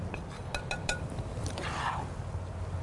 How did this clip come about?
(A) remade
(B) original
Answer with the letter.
B